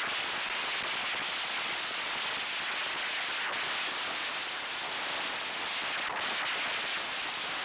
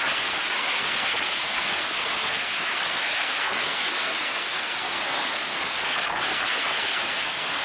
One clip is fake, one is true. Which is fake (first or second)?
second